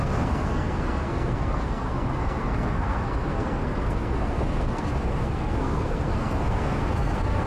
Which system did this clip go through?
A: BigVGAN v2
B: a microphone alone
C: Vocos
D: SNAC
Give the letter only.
D